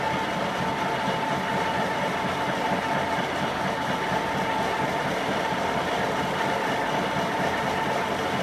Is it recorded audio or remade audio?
recorded